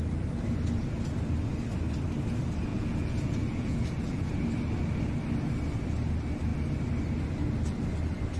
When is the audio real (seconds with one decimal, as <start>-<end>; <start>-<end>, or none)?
0.0-2.7; 4.3-8.4